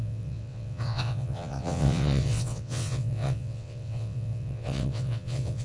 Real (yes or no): no